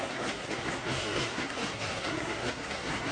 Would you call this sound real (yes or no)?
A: no